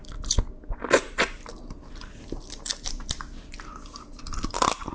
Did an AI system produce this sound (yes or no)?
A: no